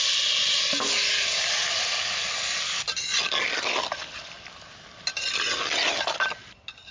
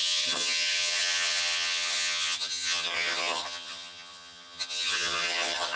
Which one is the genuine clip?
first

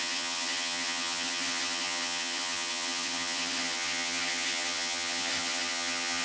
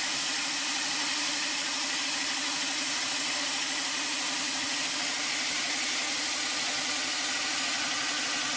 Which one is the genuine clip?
second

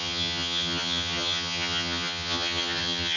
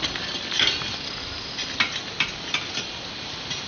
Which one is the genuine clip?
second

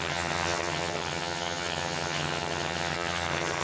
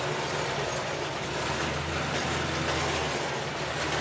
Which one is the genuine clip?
second